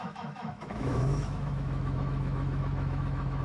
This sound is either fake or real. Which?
fake